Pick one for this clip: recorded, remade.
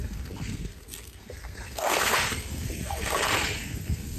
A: remade